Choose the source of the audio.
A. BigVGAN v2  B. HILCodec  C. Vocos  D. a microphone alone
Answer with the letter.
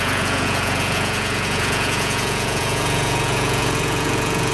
C